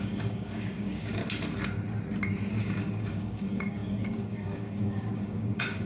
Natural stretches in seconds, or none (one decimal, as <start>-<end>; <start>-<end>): 1.2-2.6